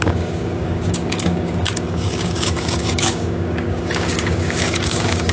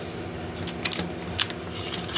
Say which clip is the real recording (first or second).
second